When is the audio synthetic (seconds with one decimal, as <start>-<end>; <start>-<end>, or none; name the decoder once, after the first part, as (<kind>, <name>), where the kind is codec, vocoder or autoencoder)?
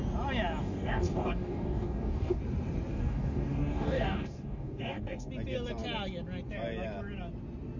0.6-2.4 (codec, DAC); 2.9-5.3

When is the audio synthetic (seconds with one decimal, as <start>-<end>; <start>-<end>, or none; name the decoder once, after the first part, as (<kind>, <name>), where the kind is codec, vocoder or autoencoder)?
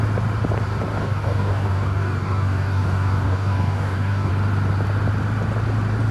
0.9-4.3 (codec, DAC)